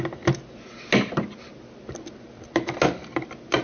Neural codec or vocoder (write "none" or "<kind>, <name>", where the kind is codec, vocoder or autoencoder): none